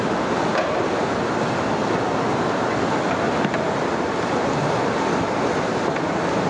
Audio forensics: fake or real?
real